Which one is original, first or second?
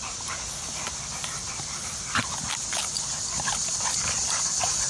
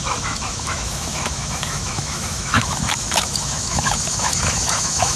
first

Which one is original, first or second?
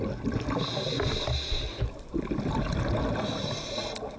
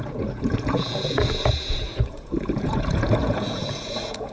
first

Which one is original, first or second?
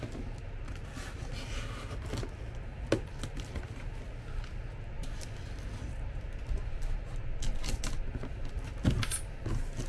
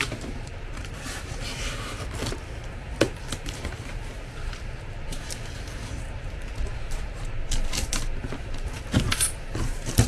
first